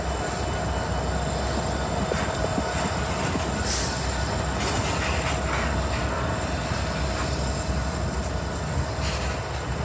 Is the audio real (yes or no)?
yes